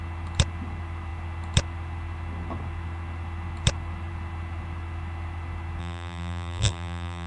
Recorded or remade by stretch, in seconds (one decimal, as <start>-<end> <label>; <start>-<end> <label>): 0.0-5.8 recorded; 5.8-7.3 remade